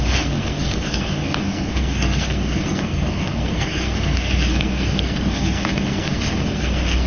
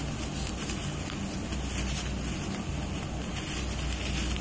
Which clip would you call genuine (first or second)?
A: second